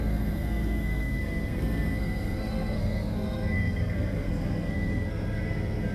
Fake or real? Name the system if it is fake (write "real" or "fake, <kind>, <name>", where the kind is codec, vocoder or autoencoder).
fake, codec, SNAC